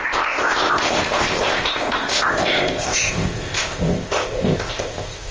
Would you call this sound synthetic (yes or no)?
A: yes